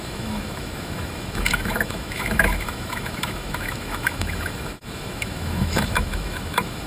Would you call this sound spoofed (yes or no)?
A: yes